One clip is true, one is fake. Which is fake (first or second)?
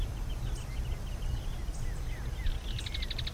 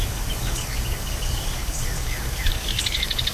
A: second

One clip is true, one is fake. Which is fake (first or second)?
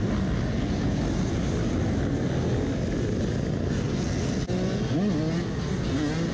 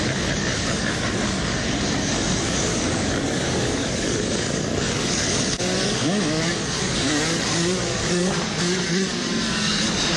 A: second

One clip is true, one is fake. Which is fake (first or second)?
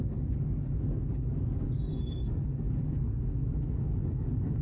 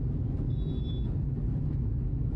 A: first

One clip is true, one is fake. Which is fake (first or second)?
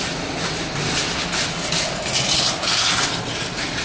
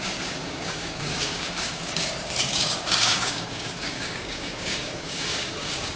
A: second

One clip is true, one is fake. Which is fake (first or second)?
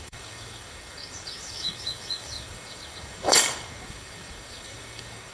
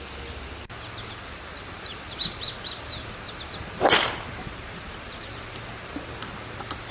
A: first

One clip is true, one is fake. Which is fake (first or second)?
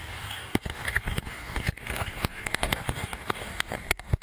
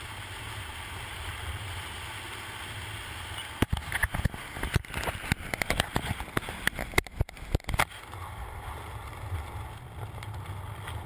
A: first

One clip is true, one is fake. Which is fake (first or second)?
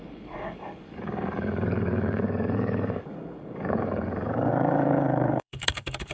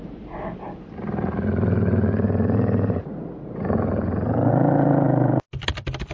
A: first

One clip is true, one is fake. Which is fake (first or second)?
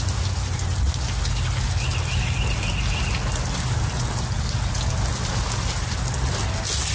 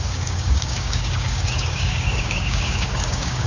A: second